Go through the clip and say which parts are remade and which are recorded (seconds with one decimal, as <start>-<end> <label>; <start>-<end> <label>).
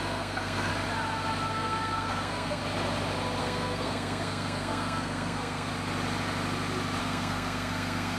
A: 0.0-0.7 remade; 0.7-1.5 recorded; 1.5-2.6 remade; 2.6-3.4 recorded; 3.4-5.7 remade; 5.7-7.0 recorded; 7.0-8.2 remade